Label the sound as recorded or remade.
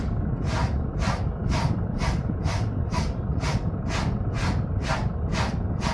recorded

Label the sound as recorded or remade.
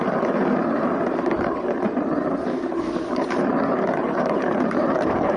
remade